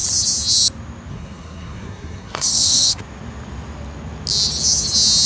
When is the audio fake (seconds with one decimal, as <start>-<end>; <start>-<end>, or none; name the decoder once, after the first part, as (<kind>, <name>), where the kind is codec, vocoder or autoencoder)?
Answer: 1.1-3.0 (codec, SNAC)